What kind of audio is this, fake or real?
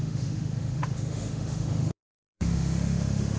fake